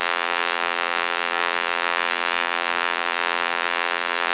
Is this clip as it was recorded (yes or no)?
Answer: no